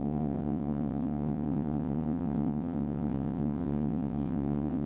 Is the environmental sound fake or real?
fake